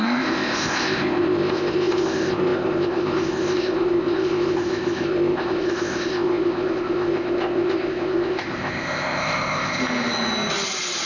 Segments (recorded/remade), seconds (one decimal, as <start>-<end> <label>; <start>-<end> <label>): 0.0-9.8 remade; 9.8-11.1 recorded